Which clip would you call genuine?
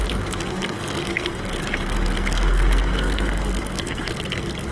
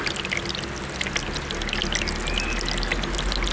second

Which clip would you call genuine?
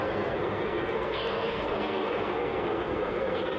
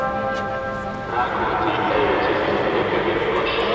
second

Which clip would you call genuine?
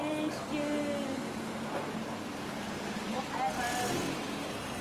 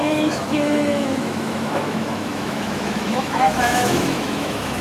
first